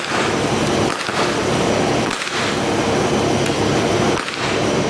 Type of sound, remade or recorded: remade